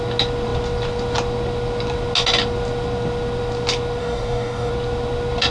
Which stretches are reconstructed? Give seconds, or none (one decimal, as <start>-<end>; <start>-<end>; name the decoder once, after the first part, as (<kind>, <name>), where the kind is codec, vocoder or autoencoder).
4.0-4.7 (codec, DAC)